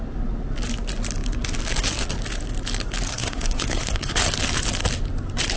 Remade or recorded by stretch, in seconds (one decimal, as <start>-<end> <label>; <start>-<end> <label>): 0.0-3.1 recorded; 3.1-4.2 remade; 4.2-5.6 recorded